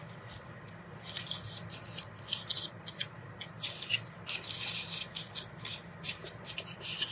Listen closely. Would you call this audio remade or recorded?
recorded